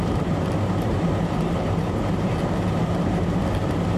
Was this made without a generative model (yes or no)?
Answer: no